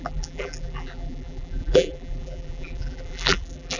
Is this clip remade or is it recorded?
remade